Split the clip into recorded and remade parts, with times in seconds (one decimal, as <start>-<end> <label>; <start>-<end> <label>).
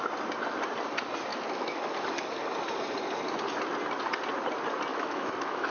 0.0-1.3 recorded; 1.3-1.9 remade; 1.9-4.9 recorded; 4.9-5.7 remade